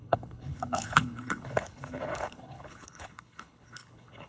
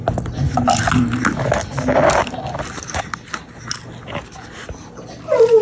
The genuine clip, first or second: second